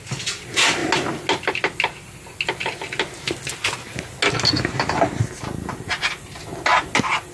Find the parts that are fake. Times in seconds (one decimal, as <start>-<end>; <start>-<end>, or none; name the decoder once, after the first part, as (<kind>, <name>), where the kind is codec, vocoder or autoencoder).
none